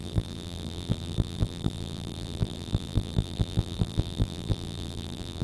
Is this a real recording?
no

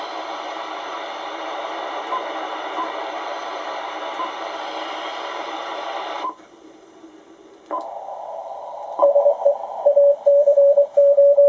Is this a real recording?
no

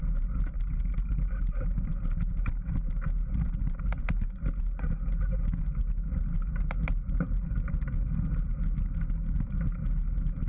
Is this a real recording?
yes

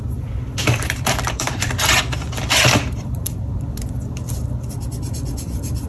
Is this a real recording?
no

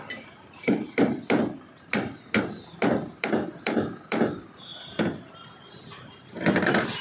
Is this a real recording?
no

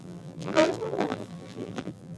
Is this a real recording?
no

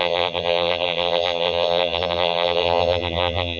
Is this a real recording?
no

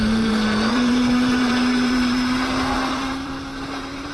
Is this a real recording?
no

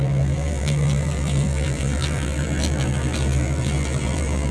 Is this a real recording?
no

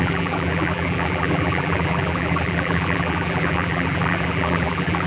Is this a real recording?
no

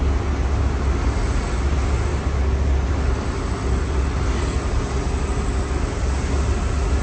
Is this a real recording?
yes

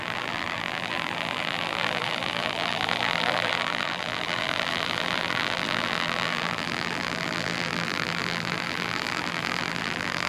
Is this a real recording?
no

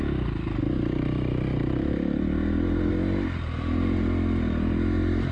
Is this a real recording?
yes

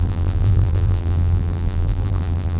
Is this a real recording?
no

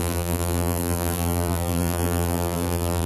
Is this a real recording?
no